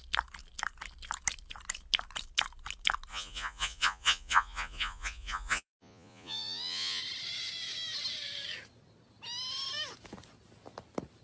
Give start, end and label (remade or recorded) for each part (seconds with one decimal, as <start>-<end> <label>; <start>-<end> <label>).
0.0-3.1 recorded; 3.1-7.0 remade; 7.0-11.2 recorded